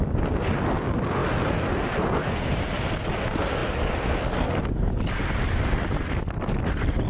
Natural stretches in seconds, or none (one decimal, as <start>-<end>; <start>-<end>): 0.0-7.1